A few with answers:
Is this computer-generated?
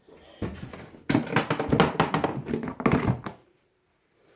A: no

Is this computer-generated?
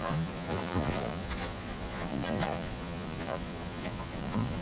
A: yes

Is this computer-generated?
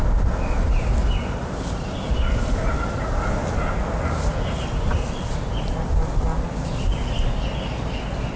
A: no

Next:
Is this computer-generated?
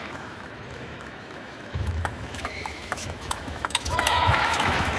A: yes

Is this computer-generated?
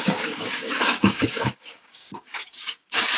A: yes